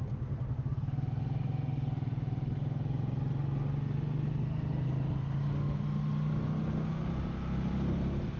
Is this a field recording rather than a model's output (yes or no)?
yes